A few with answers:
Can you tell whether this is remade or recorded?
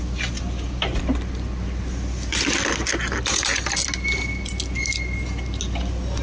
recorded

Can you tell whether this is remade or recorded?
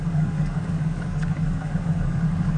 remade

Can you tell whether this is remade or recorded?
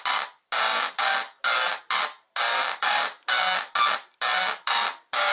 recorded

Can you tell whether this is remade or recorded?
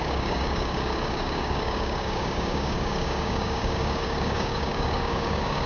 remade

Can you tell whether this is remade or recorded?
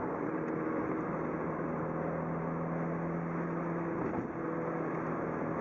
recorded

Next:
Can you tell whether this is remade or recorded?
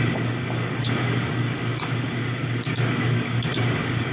remade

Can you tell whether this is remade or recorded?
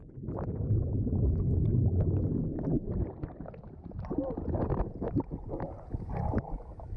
recorded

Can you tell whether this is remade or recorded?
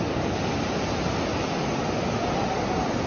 recorded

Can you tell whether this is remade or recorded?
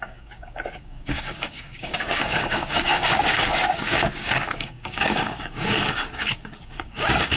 remade